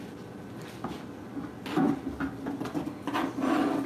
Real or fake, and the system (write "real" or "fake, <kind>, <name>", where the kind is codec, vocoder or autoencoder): real